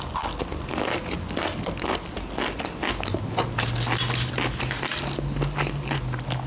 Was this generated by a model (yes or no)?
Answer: no